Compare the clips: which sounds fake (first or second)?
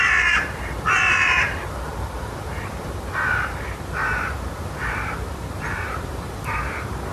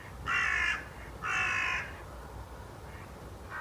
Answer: first